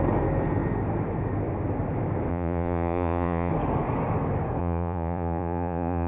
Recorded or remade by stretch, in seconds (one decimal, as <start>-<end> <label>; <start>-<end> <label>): 0.0-2.3 recorded; 2.3-3.5 remade; 3.5-4.6 recorded; 4.6-6.1 remade